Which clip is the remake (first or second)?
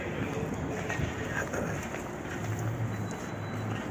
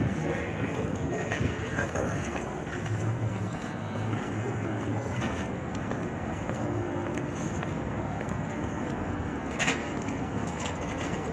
second